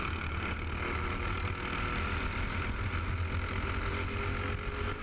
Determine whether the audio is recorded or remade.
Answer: recorded